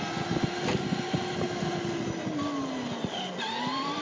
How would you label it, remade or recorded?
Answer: recorded